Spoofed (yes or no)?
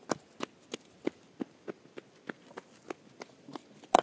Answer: no